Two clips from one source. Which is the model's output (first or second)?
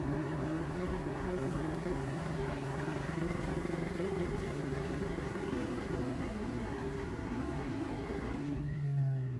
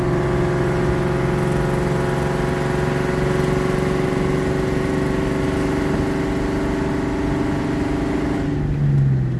first